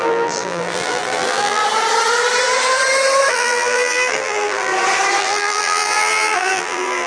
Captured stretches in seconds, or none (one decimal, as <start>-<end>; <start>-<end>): 1.6-3.3; 4.7-5.2